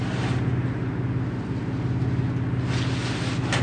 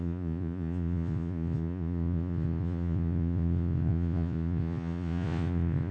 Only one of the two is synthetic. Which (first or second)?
second